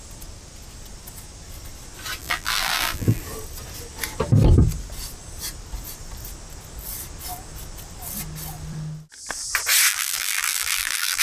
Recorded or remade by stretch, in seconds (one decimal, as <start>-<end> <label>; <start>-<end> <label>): 0.0-2.2 recorded; 2.2-3.2 remade; 3.2-9.9 recorded; 9.9-11.2 remade

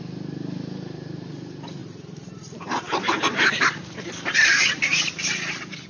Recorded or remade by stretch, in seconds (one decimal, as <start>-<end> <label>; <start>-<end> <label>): 0.0-1.8 recorded; 1.8-5.1 remade; 5.1-5.9 recorded

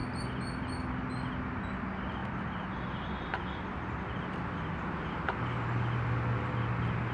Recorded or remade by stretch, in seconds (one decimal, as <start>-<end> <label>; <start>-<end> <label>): 0.0-0.7 remade; 0.7-7.1 recorded

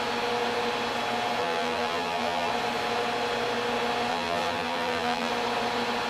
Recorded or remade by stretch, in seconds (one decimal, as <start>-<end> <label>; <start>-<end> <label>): 0.0-1.4 recorded; 1.4-2.5 remade; 2.5-4.1 recorded; 4.1-5.3 remade; 5.3-6.1 recorded

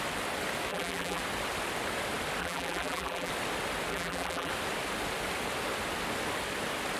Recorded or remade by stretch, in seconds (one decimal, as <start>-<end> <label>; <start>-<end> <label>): 0.0-0.7 recorded; 0.7-1.2 remade; 1.2-2.4 recorded; 2.4-3.3 remade; 3.3-3.9 recorded; 3.9-4.5 remade; 4.5-7.0 recorded

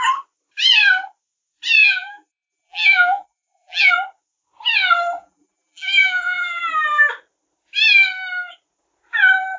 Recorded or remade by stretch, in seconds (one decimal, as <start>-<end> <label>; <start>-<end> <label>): 0.0-1.8 recorded; 1.8-3.9 remade; 3.9-5.2 recorded; 5.2-6.6 remade; 6.6-9.6 recorded

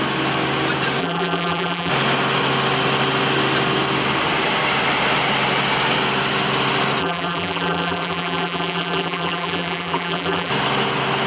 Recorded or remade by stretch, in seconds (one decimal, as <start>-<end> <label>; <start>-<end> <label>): 0.0-1.0 recorded; 1.0-1.9 remade; 1.9-7.0 recorded; 7.0-10.5 remade; 10.5-11.3 recorded